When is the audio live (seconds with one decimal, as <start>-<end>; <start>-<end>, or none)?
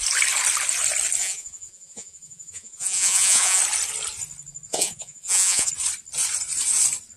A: 0.0-1.2; 3.6-4.7; 5.7-7.2